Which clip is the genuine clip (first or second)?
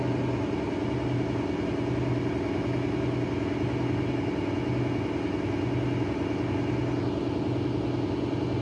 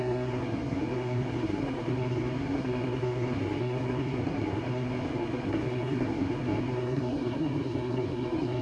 first